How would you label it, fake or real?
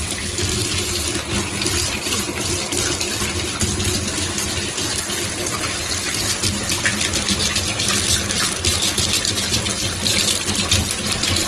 real